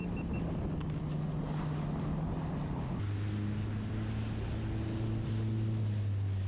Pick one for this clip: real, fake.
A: real